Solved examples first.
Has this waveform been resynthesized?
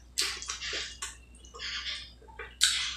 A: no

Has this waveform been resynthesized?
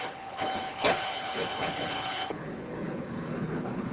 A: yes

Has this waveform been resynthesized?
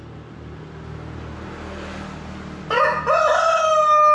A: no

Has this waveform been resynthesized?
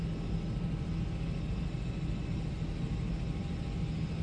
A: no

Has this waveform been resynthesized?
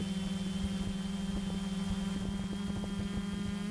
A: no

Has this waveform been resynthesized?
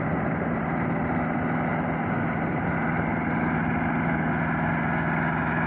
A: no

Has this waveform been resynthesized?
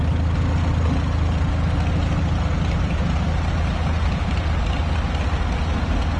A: no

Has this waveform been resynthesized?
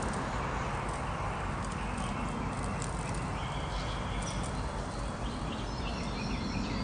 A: no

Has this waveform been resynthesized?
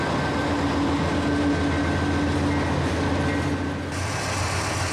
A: no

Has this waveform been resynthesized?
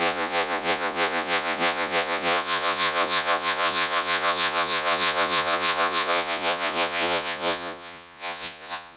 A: yes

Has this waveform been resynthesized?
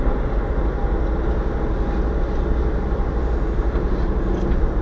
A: no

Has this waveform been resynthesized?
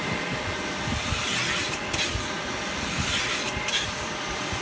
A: yes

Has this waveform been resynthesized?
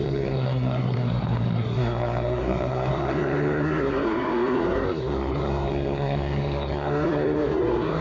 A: yes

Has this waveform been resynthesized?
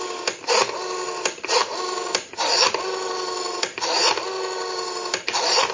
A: no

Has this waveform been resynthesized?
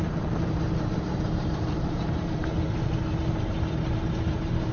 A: yes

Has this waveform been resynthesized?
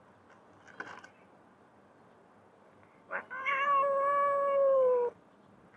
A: yes